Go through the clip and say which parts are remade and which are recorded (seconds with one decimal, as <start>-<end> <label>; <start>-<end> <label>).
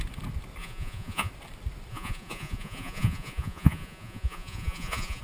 0.0-0.6 recorded; 0.6-1.3 remade; 1.3-1.9 recorded; 1.9-5.2 remade